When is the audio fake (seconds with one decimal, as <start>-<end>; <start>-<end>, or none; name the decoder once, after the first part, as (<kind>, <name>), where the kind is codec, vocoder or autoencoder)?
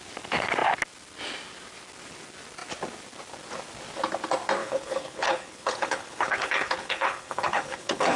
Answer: 4.6-8.2 (codec, HILCodec)